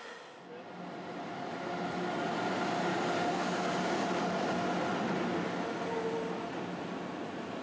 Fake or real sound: real